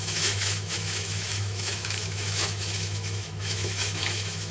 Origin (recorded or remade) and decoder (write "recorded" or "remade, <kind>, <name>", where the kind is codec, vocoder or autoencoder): remade, autoencoder, DAC-VAE